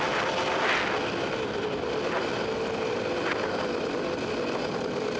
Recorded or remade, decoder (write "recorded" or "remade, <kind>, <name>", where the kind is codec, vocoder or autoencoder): recorded